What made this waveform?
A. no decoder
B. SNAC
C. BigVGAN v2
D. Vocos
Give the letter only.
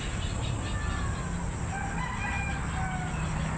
A